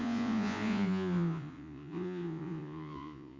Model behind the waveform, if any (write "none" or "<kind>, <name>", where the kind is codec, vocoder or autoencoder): vocoder, Vocos